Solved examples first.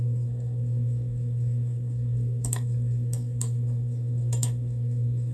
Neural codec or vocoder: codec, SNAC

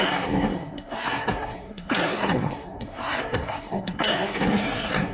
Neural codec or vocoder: codec, SNAC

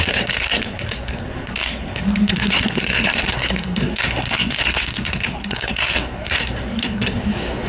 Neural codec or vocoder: codec, SNAC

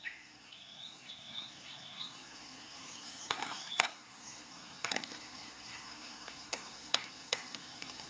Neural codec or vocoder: codec, SNAC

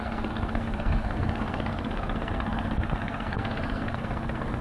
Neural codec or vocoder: codec, SNAC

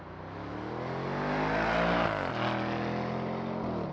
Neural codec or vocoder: none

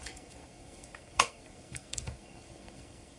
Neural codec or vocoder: codec, SNAC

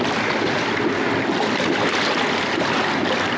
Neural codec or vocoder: none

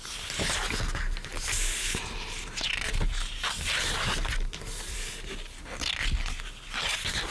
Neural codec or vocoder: none